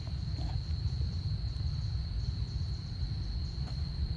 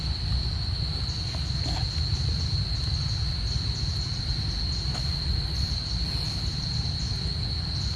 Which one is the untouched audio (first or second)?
second